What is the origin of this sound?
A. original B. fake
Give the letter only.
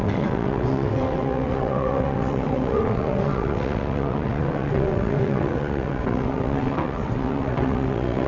B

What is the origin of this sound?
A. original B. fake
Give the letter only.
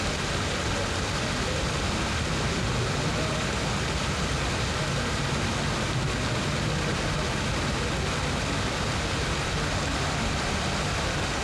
A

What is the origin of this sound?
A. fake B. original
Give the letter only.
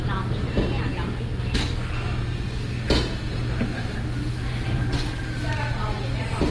B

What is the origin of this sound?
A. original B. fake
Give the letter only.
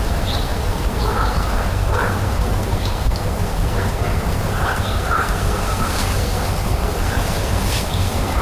B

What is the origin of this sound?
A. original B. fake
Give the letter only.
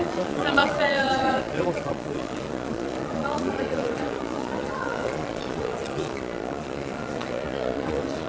B